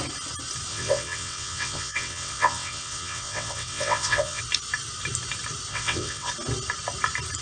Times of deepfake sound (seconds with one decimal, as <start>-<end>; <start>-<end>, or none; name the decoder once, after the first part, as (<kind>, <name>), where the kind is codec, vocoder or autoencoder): 0.7-4.4 (vocoder, WaveNeXt); 5.7-6.3